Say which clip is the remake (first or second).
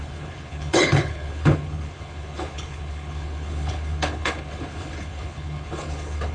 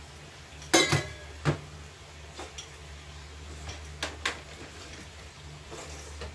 first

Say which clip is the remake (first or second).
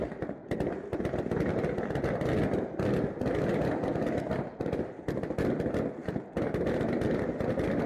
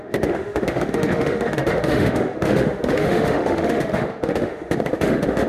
second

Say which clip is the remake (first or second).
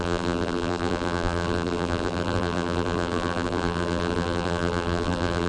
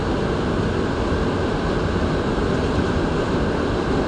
first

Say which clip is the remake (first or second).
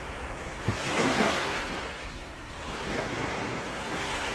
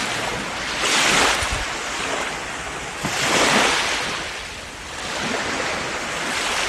first